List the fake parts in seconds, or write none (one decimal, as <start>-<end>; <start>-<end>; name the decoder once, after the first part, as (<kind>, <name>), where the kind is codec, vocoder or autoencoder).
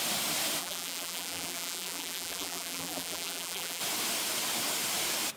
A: 0.6-3.8 (vocoder, BigVGAN v2)